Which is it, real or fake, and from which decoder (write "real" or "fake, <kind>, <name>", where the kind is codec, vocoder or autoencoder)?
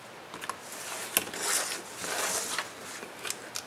real